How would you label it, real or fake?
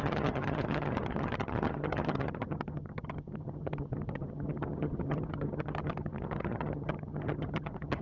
fake